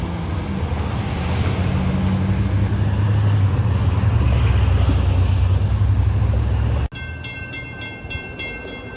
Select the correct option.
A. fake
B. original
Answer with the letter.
B